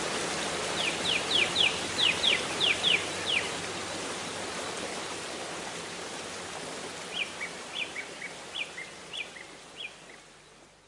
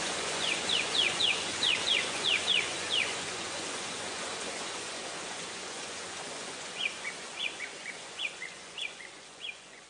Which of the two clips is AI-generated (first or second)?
second